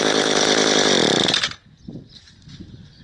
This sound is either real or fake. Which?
real